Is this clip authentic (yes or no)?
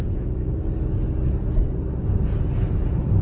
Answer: yes